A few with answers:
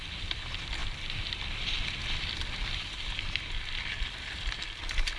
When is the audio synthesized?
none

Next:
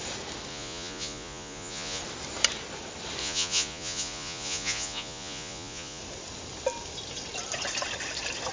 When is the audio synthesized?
0.5-2.0 (vocoder, Vocos); 3.2-6.0

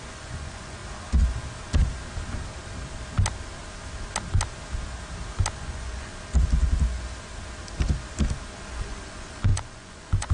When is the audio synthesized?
0.0-0.8 (vocoder, Vocos); 5.5-6.1; 8.7-10.3

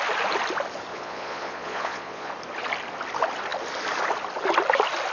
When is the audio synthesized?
0.9-2.3 (vocoder, Vocos)

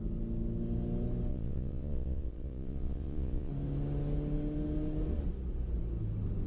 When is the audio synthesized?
1.3-3.5 (vocoder, Vocos)